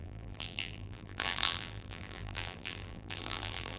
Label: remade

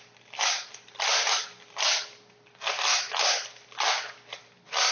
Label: recorded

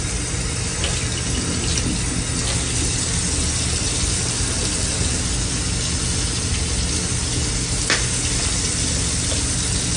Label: recorded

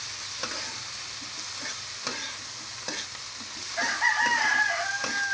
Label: recorded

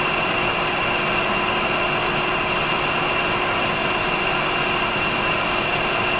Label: recorded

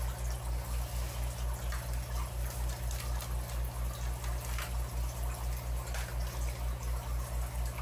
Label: recorded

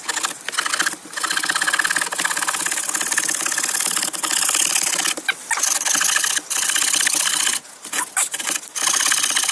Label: recorded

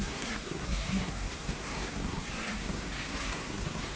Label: remade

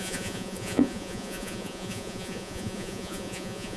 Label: remade